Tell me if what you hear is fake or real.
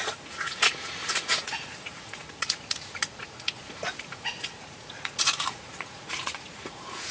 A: fake